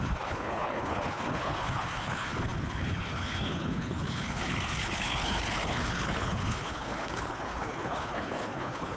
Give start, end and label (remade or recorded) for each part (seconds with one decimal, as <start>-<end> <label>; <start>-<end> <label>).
0.0-9.0 remade